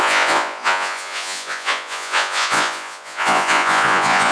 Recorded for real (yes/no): no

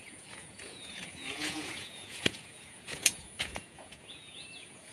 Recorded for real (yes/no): no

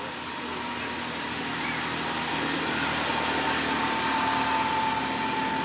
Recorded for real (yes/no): yes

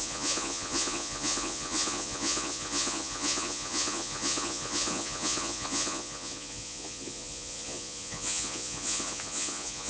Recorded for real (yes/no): no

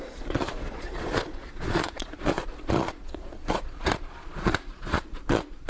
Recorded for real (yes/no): no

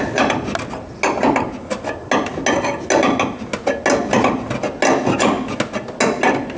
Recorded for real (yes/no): yes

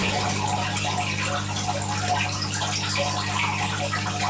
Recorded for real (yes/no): yes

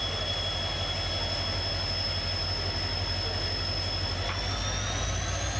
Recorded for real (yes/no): yes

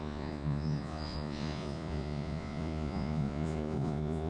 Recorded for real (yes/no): no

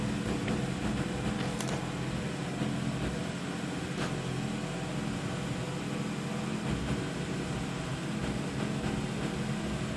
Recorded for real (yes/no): yes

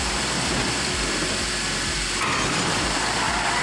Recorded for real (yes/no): yes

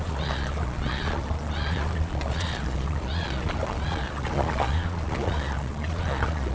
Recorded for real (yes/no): no